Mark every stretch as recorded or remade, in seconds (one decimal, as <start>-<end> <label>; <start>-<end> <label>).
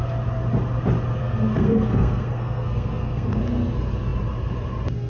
0.0-1.2 recorded; 1.2-3.4 remade; 3.4-5.1 recorded